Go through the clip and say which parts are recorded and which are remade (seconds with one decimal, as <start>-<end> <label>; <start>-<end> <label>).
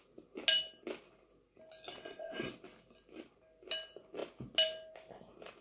0.0-2.0 recorded; 2.0-2.5 remade; 2.5-5.6 recorded